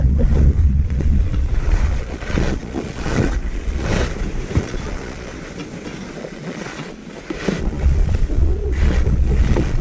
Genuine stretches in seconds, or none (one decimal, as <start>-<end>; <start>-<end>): 3.9-4.6; 5.3-6.2; 7.0-7.6